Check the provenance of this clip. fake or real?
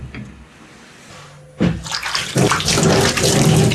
real